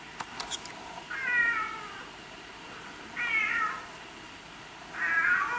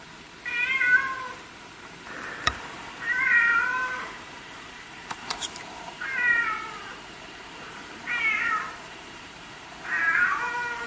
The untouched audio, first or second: first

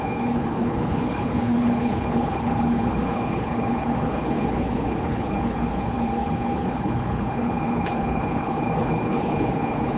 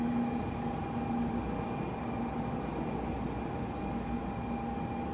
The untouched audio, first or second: second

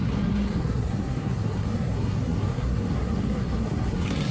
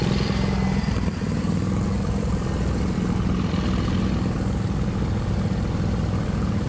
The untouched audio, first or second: second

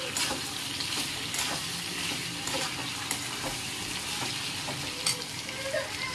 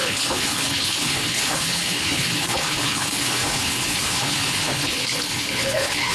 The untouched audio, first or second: first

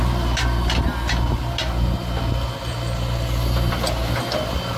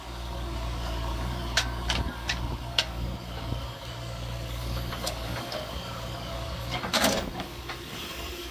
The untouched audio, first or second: first